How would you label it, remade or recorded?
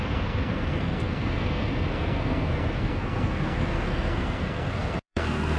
remade